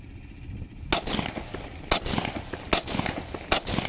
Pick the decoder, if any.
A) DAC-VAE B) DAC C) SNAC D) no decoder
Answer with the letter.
D